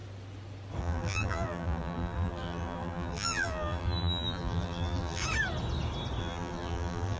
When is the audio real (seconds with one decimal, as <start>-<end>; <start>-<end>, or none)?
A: 0.0-0.8; 5.2-6.2